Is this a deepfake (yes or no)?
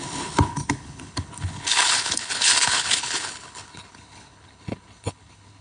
yes